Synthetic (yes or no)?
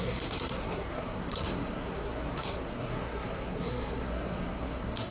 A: yes